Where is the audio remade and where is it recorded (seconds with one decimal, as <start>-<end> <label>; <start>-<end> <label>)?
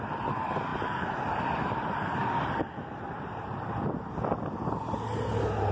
0.0-0.7 recorded; 0.7-4.1 remade; 4.1-5.7 recorded